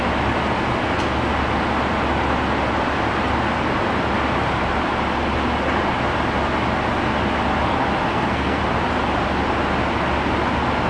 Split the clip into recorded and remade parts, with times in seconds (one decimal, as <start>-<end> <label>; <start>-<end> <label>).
0.0-8.1 recorded; 8.1-8.6 remade; 8.6-10.9 recorded